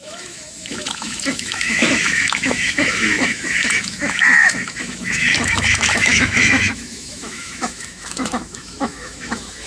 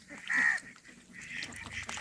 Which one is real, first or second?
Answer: second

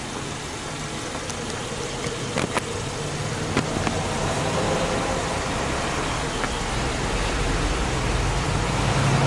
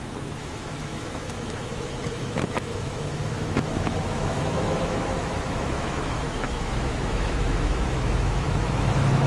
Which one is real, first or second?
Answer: first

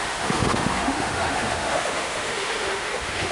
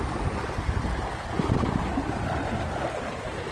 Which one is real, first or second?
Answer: second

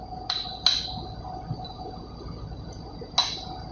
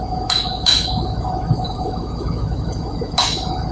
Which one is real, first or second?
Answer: first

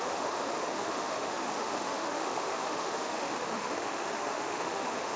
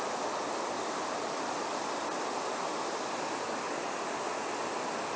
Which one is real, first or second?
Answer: second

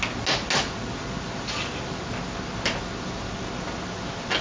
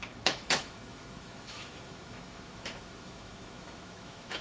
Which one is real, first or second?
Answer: first